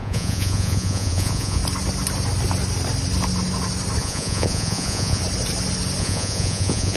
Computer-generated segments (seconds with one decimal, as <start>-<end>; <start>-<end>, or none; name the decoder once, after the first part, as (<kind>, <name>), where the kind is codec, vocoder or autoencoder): 0.0-1.6 (vocoder, Vocos); 4.0-5.2; 6.0-7.0